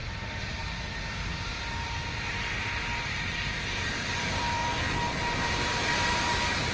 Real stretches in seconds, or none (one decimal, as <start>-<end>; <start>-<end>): 0.0-3.8; 4.6-5.4